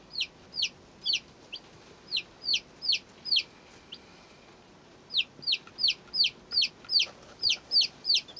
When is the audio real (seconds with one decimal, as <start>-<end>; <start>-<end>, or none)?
0.0-8.4